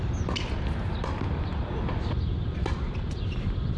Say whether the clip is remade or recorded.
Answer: recorded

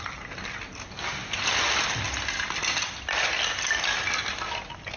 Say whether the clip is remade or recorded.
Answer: recorded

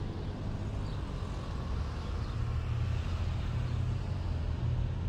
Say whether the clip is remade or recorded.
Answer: recorded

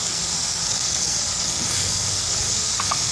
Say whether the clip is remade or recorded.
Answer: remade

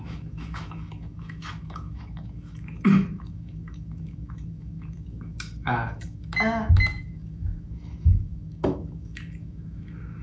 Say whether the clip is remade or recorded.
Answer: remade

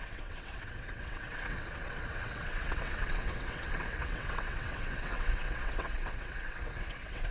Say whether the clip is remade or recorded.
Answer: remade